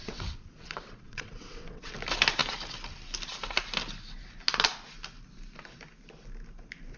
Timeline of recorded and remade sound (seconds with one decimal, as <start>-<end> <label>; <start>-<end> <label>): 0.0-1.9 remade; 1.9-7.0 recorded